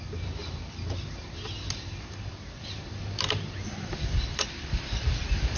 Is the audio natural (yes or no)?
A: no